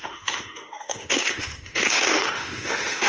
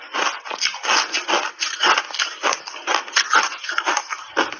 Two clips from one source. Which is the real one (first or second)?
second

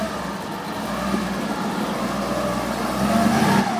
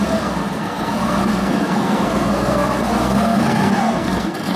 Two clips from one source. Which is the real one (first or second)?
first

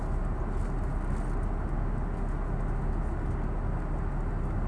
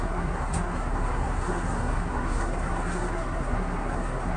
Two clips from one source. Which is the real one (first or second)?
first